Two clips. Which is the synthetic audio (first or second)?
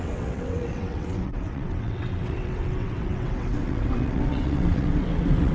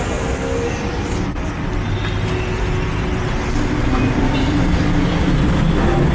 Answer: first